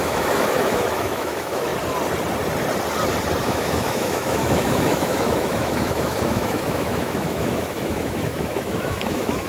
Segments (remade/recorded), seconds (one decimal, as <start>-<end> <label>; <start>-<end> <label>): 0.0-1.7 remade; 1.7-3.4 recorded; 3.4-9.5 remade